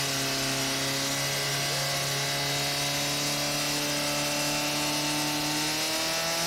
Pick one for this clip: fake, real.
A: real